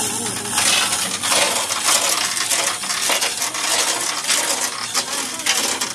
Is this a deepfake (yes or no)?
no